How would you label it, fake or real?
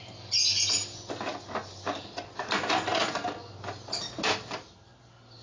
real